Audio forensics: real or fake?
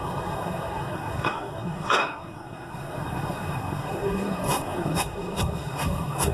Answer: fake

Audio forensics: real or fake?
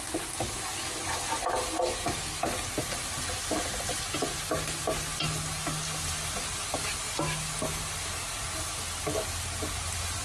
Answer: real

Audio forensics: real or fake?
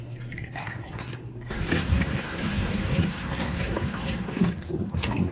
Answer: fake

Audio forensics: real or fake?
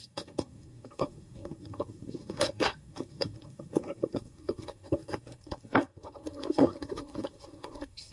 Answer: fake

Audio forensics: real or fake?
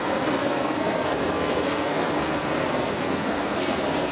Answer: fake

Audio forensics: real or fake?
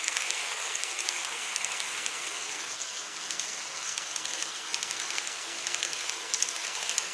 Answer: fake